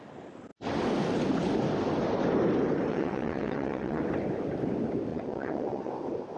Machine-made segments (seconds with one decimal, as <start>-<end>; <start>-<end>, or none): 2.9-4.0; 5.1-5.9